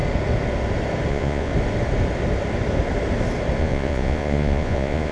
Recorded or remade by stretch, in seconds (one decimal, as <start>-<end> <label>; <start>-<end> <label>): 0.0-1.1 recorded; 1.1-1.5 remade; 1.5-3.6 recorded; 3.6-5.1 remade